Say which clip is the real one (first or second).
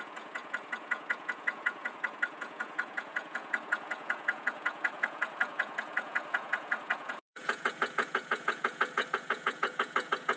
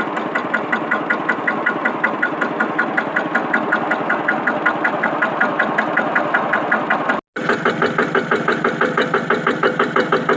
second